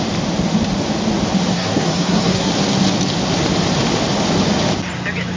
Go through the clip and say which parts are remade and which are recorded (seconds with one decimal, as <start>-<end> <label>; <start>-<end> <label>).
0.0-1.5 recorded; 1.5-2.5 remade; 2.5-5.4 recorded